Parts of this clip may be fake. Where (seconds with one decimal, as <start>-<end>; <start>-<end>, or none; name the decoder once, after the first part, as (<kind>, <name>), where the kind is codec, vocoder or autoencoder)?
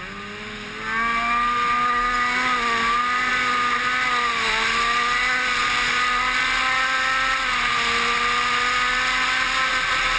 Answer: none